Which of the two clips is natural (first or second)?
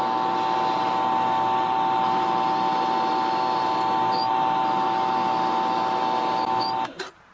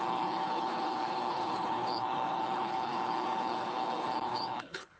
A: first